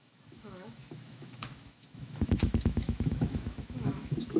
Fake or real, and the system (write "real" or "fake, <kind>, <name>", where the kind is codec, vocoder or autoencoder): fake, autoencoder, DAC-VAE